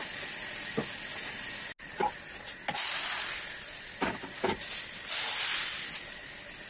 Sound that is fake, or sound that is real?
real